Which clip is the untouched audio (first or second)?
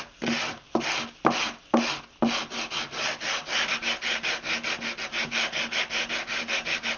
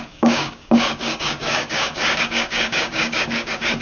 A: first